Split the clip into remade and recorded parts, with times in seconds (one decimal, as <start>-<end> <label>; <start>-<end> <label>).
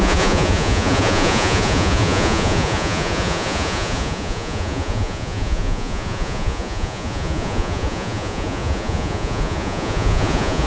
0.0-10.7 remade